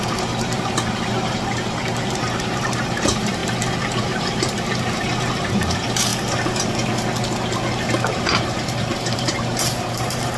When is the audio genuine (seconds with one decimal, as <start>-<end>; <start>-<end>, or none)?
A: 3.4-4.0; 6.1-8.2